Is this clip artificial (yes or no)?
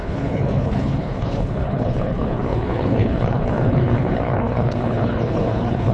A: yes